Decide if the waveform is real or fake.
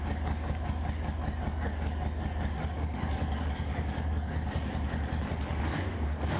fake